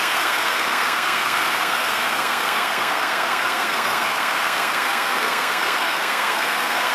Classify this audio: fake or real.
fake